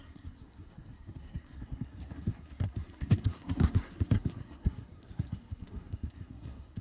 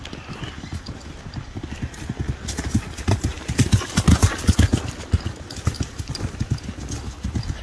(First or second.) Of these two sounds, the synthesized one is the first